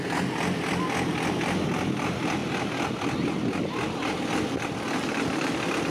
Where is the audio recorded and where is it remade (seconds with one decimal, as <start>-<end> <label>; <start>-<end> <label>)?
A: 0.0-5.9 recorded

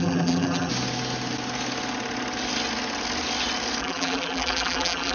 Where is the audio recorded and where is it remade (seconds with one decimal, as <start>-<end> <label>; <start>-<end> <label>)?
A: 0.0-0.7 remade; 0.7-3.8 recorded; 3.8-5.1 remade

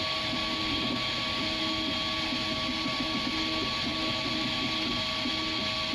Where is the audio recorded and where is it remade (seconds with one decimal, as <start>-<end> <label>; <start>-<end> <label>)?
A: 0.0-5.9 recorded

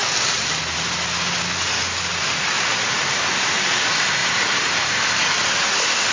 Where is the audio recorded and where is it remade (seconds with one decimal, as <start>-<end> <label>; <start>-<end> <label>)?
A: 0.0-0.6 remade; 0.6-2.1 recorded; 2.1-3.2 remade; 3.2-4.2 recorded; 4.2-5.2 remade; 5.2-6.1 recorded

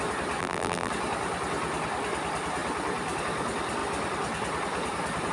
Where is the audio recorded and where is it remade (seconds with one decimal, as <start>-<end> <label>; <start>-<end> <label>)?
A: 0.0-0.4 recorded; 0.4-0.9 remade; 0.9-5.3 recorded

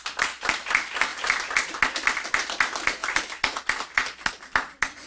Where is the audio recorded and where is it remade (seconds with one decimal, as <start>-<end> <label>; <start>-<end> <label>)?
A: 0.0-5.1 recorded

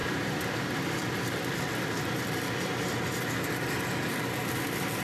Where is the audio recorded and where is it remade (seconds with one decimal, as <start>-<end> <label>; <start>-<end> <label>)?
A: 0.0-2.7 remade; 2.7-3.9 recorded; 3.9-5.0 remade

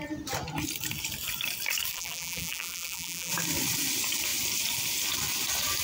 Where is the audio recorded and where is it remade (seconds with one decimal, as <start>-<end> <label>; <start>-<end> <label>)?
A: 0.0-1.9 recorded; 1.9-3.3 remade; 3.3-5.8 recorded